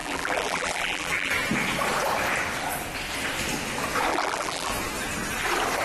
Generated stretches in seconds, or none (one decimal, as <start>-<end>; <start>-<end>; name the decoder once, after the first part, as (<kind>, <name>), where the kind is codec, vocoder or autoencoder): 0.0-1.3 (vocoder, BigVGAN v2); 4.1-4.7